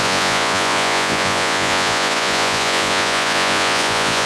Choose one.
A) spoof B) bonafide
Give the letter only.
A